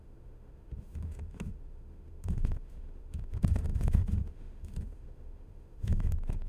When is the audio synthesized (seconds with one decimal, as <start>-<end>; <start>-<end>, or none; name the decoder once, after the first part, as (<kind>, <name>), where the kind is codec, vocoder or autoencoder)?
0.0-6.5 (autoencoder, DAC-VAE)

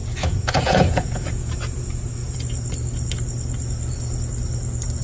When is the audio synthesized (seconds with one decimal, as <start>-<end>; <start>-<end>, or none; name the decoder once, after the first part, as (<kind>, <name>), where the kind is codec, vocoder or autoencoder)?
0.0-1.8 (vocoder, Vocos)

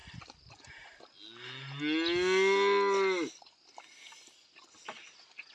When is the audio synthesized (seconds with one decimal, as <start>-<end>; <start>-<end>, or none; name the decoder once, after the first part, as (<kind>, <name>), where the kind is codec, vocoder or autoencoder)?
none

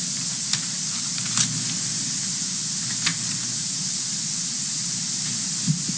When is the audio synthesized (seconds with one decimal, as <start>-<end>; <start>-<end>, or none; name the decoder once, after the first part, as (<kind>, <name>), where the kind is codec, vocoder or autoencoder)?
3.1-5.4 (vocoder, BigVGAN v2)

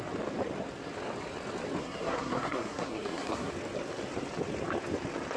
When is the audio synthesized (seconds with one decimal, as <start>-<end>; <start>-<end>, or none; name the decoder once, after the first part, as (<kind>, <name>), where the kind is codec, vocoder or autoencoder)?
1.8-3.5 (codec, SNAC)

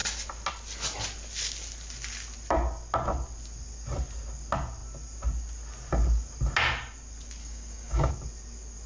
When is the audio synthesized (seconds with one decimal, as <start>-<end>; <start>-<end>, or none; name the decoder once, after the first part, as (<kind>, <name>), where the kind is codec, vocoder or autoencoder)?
7.4-8.1 (codec, DAC)